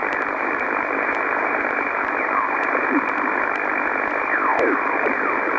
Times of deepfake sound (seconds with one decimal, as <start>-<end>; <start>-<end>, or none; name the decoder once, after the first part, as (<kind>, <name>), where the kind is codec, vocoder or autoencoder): 0.0-3.0 (vocoder, BigVGAN v2); 4.5-5.6

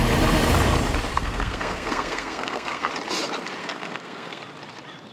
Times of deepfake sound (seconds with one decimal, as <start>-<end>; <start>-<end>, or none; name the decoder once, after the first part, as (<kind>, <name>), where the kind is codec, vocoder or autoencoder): 1.1-2.9 (codec, SNAC); 3.6-4.4

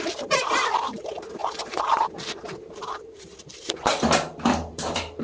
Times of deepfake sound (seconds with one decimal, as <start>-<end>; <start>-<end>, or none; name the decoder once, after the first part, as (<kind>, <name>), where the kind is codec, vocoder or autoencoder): 0.0-3.3 (vocoder, BigVGAN v2); 4.5-5.2

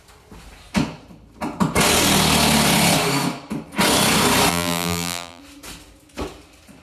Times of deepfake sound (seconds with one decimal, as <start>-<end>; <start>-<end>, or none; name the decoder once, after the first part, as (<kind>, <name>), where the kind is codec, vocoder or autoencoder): 4.5-5.4 (vocoder, BigVGAN v2)

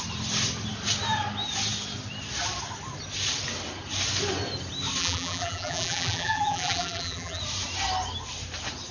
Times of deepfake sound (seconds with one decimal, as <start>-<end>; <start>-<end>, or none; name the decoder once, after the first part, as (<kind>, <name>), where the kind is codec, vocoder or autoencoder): 5.0-7.4 (vocoder, BigVGAN v2)

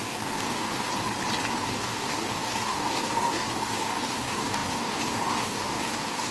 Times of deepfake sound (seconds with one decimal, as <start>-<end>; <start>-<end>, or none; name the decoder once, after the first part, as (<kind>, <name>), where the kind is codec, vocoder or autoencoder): 0.0-0.9 (codec, DAC); 1.5-6.3

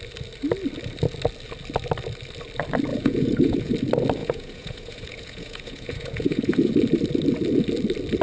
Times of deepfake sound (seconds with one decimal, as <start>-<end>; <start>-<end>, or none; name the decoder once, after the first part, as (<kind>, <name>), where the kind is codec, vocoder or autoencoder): 2.9-3.7 (vocoder, Vocos); 4.2-6.7

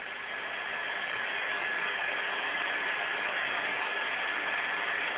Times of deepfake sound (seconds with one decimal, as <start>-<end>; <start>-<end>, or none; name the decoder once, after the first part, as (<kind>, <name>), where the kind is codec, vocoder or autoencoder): 0.8-2.5 (codec, DAC); 3.1-4.2